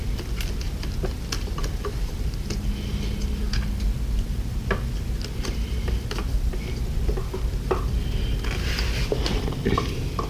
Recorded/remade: recorded